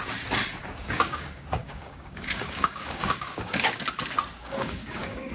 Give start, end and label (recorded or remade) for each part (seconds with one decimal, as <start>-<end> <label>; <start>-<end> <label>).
0.0-0.6 recorded; 0.6-3.8 remade; 3.8-4.4 recorded; 4.4-5.3 remade